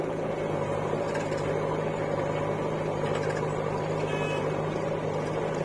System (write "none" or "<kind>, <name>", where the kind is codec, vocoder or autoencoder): none